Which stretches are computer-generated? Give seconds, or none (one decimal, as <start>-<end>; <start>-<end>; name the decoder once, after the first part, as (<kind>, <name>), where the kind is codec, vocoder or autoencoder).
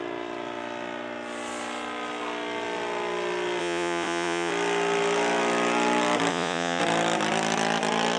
3.6-4.5 (vocoder, Vocos); 6.3-6.8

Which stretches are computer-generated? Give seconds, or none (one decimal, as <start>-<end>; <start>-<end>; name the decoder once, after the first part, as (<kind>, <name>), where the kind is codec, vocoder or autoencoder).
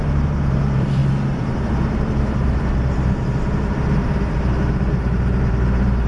0.0-1.0 (vocoder, BigVGAN v2); 2.0-6.1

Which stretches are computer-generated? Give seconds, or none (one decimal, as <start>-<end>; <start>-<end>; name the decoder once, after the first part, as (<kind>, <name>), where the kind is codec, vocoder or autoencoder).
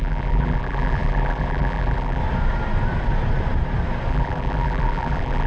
0.0-2.2 (vocoder, BigVGAN v2); 4.1-5.5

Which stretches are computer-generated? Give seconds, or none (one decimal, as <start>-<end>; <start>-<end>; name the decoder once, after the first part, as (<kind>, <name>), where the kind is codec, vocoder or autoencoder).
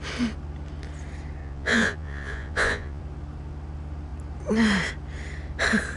1.4-3.0 (vocoder, Vocos)